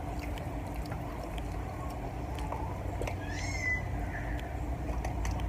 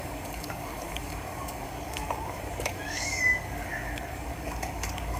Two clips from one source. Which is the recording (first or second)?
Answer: first